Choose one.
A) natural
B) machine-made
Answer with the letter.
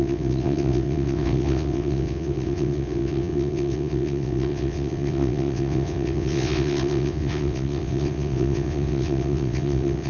B